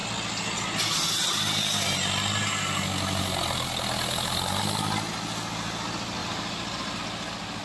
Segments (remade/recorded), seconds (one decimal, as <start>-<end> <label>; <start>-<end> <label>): 0.0-6.2 recorded; 6.2-7.0 remade; 7.0-7.6 recorded